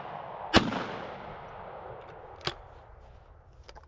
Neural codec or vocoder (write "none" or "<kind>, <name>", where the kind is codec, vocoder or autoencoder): none